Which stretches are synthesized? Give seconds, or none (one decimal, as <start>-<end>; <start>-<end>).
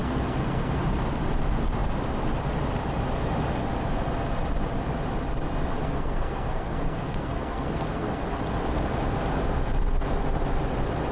0.0-0.8; 5.8-8.4